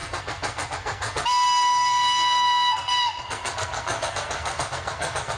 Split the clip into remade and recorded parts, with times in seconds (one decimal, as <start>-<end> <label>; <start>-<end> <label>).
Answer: 0.0-5.4 remade